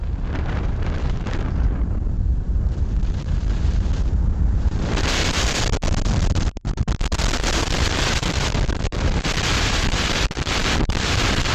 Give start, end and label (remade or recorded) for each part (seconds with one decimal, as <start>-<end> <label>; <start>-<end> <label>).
0.0-11.5 remade